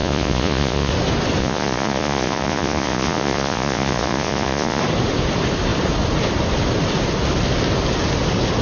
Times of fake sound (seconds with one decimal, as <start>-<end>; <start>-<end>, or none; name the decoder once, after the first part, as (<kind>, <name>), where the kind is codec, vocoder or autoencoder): 0.0-0.9 (vocoder, Vocos); 1.4-4.8